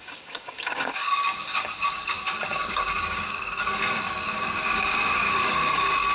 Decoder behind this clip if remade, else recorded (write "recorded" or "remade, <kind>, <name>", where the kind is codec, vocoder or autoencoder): remade, codec, DAC